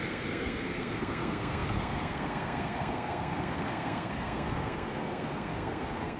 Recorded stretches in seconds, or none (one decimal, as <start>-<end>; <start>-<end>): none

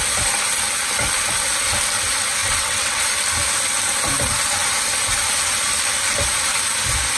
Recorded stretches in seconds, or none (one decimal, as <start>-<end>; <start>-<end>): 0.0-2.4; 3.0-7.2

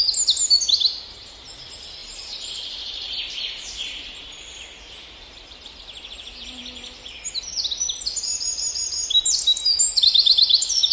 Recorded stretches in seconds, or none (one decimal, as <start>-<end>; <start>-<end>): 0.0-2.0; 5.8-10.9